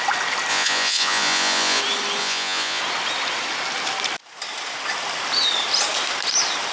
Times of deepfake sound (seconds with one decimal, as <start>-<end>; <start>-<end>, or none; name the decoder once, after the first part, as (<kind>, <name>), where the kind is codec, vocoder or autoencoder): 0.5-1.8 (vocoder, Vocos); 2.2-2.8